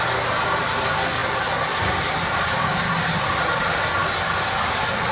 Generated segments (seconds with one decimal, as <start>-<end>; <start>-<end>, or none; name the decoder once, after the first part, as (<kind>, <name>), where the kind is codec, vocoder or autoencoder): none